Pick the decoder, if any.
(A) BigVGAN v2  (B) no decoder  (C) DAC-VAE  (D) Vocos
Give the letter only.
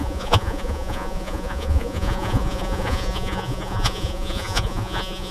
D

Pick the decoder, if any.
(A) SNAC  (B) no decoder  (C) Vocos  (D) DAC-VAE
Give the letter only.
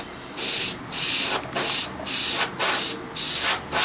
B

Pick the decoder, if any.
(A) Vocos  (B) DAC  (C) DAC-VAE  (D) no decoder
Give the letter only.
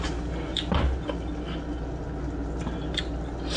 D